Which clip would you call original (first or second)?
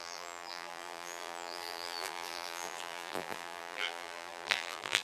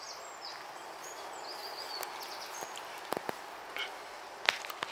second